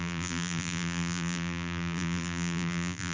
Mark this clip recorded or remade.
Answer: remade